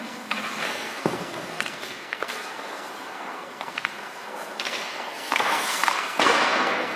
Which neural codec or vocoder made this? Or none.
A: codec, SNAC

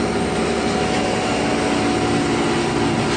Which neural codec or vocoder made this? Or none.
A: none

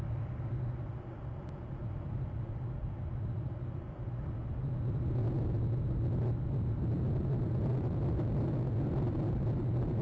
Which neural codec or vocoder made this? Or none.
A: none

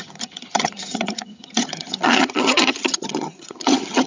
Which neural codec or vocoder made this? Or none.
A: vocoder, HiFi-GAN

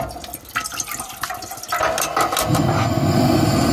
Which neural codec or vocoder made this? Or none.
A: none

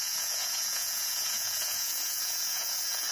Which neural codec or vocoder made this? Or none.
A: vocoder, Vocos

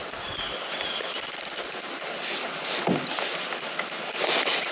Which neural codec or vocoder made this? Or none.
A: none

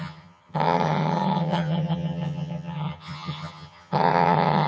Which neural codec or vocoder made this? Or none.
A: vocoder, HiFi-GAN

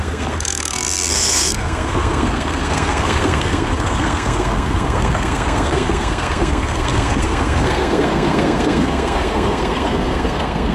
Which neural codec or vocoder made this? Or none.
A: codec, SNAC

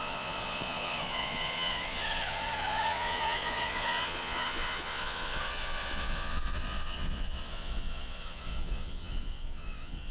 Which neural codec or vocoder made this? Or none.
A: vocoder, Vocos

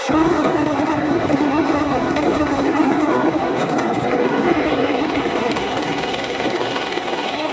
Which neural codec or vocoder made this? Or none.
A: codec, SNAC